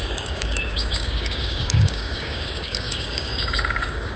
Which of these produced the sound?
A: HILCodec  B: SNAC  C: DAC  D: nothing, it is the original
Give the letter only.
C